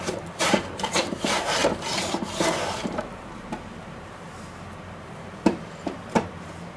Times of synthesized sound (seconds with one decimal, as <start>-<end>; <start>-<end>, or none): 0.0-6.8